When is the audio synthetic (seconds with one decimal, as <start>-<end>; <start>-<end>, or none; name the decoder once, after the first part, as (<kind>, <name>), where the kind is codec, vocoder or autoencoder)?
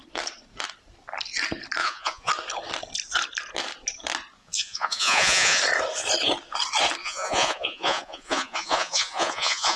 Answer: 1.8-2.3 (vocoder, Vocos); 4.4-5.6; 7.0-9.8